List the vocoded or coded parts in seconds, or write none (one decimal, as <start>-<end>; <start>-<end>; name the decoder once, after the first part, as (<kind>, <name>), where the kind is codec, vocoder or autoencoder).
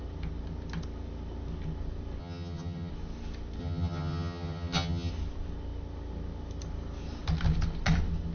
2.2-2.9 (vocoder, HiFi-GAN); 3.6-5.1